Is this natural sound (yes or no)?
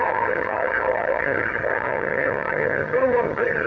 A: no